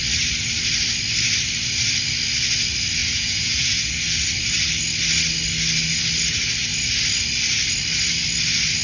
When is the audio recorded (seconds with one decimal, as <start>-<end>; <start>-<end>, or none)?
0.0-3.0; 3.9-8.8